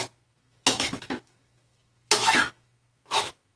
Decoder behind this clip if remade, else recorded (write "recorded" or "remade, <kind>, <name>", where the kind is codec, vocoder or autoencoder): remade, autoencoder, DAC-VAE